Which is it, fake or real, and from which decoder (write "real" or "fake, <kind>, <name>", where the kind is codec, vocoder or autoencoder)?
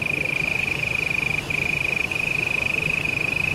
real